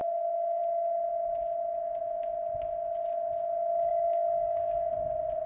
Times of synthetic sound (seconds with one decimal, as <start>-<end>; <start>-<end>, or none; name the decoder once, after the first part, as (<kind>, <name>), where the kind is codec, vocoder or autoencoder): 0.0-0.6 (codec, DAC); 3.9-4.9